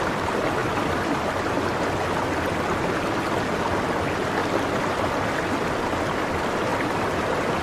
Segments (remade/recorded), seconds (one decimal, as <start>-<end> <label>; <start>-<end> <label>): 0.0-0.6 recorded; 0.6-2.3 remade; 2.3-4.4 recorded; 4.4-5.1 remade; 5.1-6.7 recorded; 6.7-7.6 remade